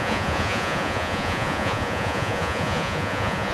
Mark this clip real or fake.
fake